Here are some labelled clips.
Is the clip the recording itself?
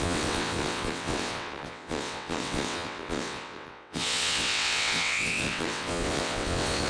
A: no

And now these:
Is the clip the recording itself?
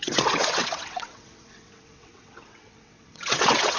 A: no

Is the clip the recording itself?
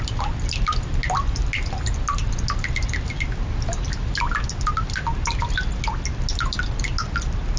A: yes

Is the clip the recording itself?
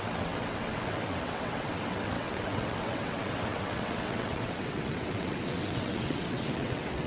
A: no